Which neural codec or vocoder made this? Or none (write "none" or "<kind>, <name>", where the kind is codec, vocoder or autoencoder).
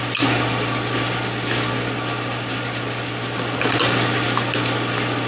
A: none